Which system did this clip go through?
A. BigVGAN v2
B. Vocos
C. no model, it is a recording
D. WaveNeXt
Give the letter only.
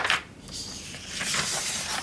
C